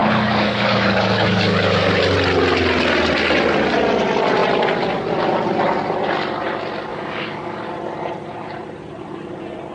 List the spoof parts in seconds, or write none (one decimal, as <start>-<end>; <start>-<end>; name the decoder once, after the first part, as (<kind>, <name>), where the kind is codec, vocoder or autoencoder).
0.0-2.0 (codec, DAC); 6.9-7.7